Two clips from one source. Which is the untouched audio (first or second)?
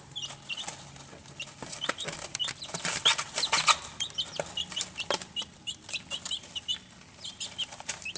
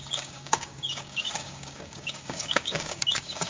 first